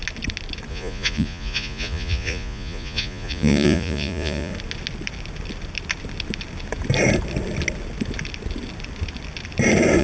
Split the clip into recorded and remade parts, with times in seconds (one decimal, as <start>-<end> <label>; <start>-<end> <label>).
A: 0.0-0.7 recorded; 0.7-4.5 remade; 4.5-10.0 recorded

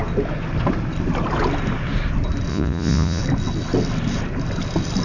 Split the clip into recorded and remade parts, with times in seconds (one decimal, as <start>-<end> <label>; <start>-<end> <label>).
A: 0.0-2.5 recorded; 2.5-3.2 remade; 3.2-5.0 recorded

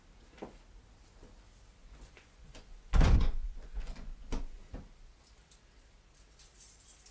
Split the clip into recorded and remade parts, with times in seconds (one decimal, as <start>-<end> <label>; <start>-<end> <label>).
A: 0.0-1.8 recorded; 1.8-4.6 remade; 4.6-7.1 recorded

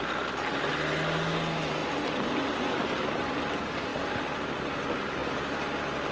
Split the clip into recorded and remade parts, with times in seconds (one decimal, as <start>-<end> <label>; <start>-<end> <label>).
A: 0.0-6.1 recorded

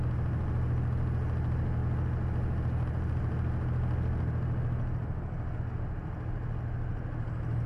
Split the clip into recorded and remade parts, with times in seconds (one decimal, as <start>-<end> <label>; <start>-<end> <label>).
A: 0.0-7.7 recorded

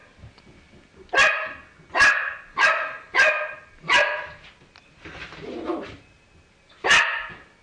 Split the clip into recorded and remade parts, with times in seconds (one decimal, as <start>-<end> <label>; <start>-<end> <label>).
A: 0.0-7.6 recorded